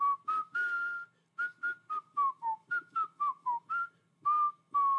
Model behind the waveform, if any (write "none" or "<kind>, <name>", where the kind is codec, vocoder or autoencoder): none